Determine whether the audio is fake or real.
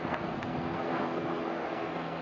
fake